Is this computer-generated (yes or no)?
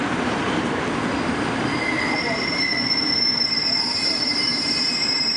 yes